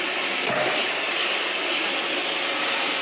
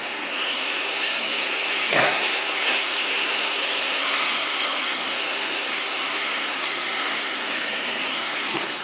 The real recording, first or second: first